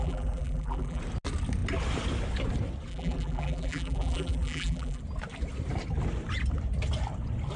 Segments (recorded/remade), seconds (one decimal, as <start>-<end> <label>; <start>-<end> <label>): 0.0-1.0 remade; 1.0-2.9 recorded; 2.9-5.0 remade; 5.0-7.6 recorded